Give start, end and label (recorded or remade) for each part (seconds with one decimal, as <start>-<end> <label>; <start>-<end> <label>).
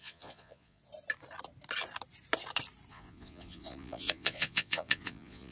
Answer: 0.0-0.8 remade; 0.8-2.9 recorded; 2.9-5.5 remade